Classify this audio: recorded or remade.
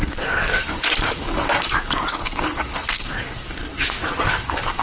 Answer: remade